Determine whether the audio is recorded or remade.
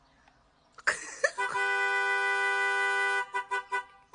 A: recorded